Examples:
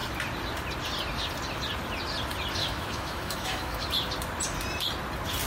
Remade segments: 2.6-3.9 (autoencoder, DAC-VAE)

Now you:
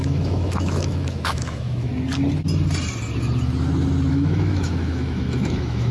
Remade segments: 0.0-1.9 (autoencoder, DAC-VAE); 4.1-5.9

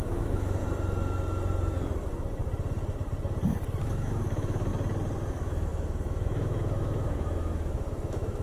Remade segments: 0.0-0.6 (autoencoder, DAC-VAE); 3.8-4.7; 5.3-8.4

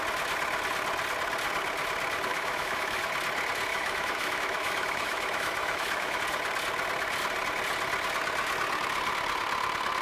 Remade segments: 2.3-3.0 (autoencoder, DAC-VAE); 3.7-6.2

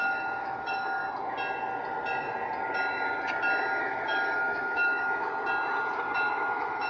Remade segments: 0.0-1.0 (autoencoder, DAC-VAE); 3.8-5.3; 6.3-6.9

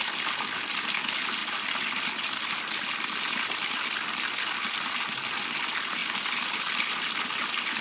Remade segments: none

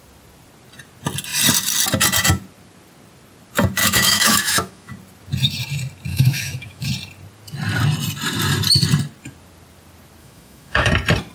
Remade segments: 3.8-4.9 (autoencoder, DAC-VAE); 6.1-6.9; 10.2-10.9

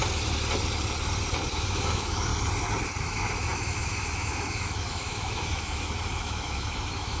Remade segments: 1.5-2.3 (autoencoder, DAC-VAE); 3.0-7.2